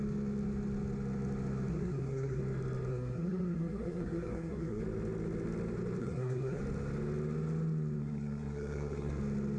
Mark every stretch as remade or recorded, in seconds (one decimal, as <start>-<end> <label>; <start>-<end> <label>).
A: 0.0-1.7 recorded; 1.7-2.4 remade; 2.4-2.9 recorded; 2.9-4.8 remade; 4.8-6.0 recorded; 6.0-6.6 remade; 6.6-8.0 recorded; 8.0-9.2 remade; 9.2-9.6 recorded